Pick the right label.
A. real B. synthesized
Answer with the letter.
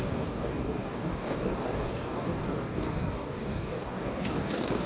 B